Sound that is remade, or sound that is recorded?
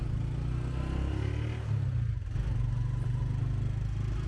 recorded